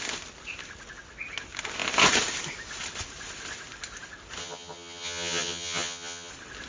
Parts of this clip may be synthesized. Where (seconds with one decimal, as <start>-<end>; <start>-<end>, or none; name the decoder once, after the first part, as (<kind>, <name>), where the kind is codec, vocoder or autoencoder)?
4.4-6.3 (vocoder, HiFi-GAN)

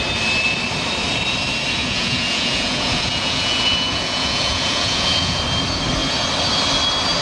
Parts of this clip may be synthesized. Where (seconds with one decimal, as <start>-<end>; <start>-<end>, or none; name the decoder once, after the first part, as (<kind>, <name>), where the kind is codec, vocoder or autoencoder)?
1.8-5.4 (vocoder, Vocos)

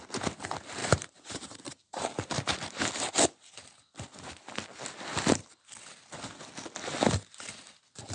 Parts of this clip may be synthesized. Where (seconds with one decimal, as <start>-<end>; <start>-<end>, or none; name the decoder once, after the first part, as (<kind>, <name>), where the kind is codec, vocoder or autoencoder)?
0.8-2.8 (vocoder, BigVGAN v2)

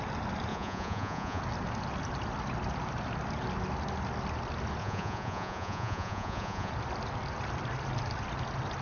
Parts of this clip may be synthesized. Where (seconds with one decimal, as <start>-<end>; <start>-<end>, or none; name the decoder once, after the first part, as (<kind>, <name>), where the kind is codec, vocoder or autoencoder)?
0.5-1.4 (vocoder, Vocos); 4.8-6.7

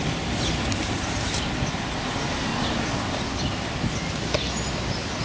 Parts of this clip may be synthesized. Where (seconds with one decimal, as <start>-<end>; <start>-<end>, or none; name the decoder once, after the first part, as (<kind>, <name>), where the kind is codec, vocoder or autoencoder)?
none

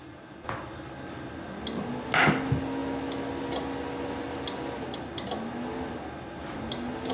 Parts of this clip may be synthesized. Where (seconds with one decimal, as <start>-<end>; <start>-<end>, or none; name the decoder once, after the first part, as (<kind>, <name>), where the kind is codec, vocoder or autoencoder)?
none